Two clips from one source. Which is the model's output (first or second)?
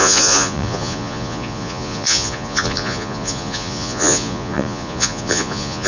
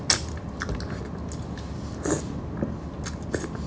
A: first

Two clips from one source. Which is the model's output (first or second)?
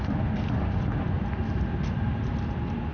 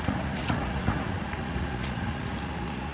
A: second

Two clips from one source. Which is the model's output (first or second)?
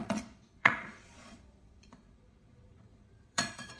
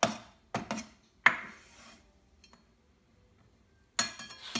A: first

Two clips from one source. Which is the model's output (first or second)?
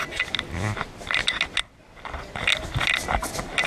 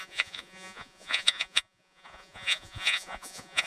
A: second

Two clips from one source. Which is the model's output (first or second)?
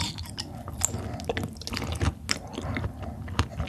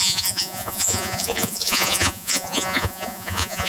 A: second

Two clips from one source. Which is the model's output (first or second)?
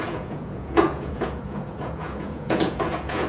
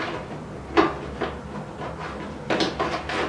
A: first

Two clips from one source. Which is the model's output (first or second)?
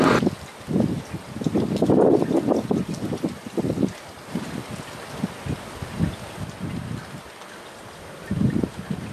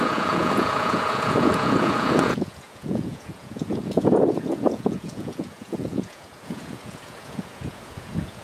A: second